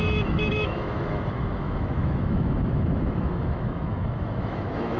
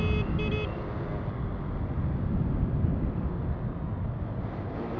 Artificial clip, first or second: first